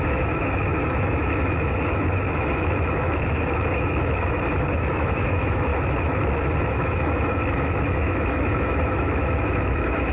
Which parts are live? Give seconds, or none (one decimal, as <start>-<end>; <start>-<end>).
5.7-6.6